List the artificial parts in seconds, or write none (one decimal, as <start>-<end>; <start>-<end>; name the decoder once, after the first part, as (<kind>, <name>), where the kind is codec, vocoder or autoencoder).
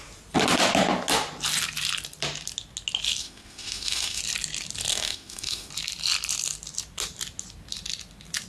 3.2-4.2 (autoencoder, DAC-VAE); 4.9-5.7